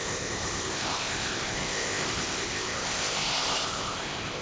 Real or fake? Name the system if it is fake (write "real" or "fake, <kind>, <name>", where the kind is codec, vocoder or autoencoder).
fake, codec, ZipCodec